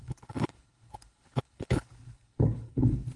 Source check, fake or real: fake